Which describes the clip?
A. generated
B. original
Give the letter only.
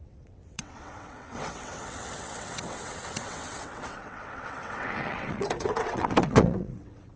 A